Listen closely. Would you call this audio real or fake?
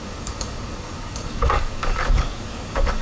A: fake